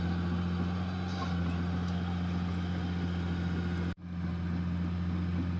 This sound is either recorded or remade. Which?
recorded